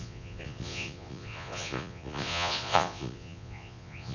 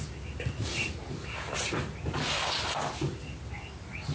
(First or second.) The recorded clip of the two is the second